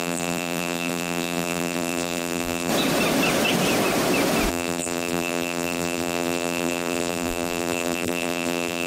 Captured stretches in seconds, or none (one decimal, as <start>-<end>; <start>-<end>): 2.7-4.5